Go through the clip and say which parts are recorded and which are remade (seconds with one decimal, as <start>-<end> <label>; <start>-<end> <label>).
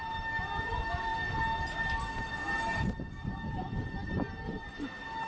0.0-5.3 recorded